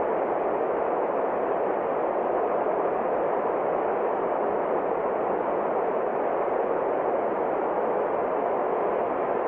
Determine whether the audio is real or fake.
real